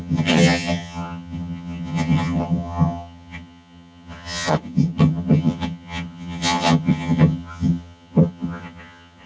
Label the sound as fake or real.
fake